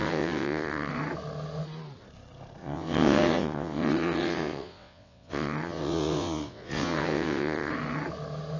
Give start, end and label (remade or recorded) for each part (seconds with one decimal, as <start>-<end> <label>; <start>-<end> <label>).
0.0-0.9 remade; 0.9-2.6 recorded; 2.6-7.7 remade; 7.7-8.6 recorded